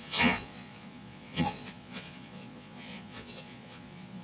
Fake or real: fake